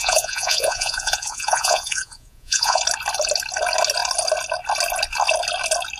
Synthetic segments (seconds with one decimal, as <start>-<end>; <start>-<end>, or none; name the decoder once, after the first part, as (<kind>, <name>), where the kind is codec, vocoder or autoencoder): 0.0-2.8 (vocoder, Vocos)